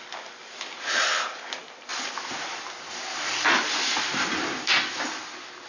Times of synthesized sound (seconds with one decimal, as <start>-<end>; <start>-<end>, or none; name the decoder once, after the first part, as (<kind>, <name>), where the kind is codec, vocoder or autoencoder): none